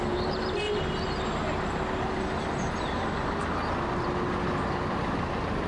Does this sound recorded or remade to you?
recorded